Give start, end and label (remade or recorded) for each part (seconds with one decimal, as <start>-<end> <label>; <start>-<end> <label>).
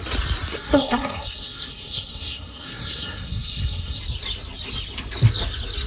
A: 0.0-0.5 recorded; 0.5-4.0 remade; 4.0-5.9 recorded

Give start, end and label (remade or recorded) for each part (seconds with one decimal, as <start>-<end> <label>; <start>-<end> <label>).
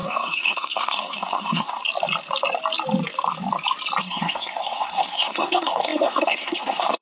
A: 0.0-1.8 remade; 1.8-4.0 recorded; 4.0-7.0 remade